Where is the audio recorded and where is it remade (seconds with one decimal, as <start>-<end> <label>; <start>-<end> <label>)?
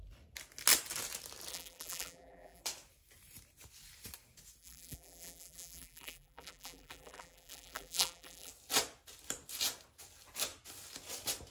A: 0.0-1.5 recorded; 1.5-2.6 remade; 2.6-4.6 recorded; 4.6-8.5 remade; 8.5-11.5 recorded